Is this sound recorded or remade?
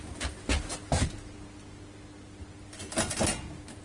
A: recorded